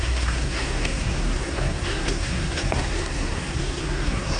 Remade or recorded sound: remade